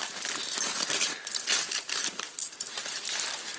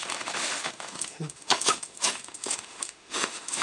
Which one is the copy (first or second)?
second